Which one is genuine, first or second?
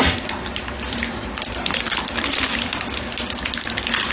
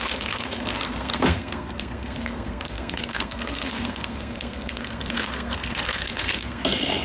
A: first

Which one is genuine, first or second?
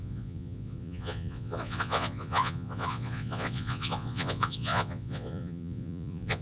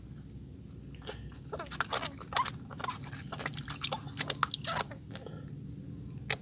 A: second